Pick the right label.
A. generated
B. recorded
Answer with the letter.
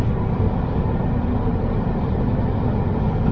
A